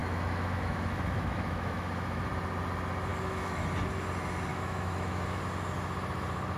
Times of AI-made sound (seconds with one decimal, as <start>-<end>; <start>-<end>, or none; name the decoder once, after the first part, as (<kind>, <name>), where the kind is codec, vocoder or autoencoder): 0.0-2.3 (autoencoder, DAC-VAE); 3.1-3.6; 4.5-5.4